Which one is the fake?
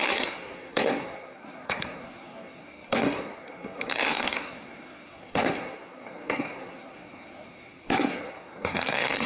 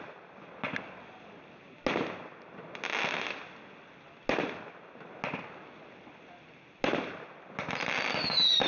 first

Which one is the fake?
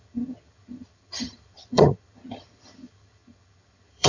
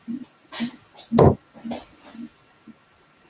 first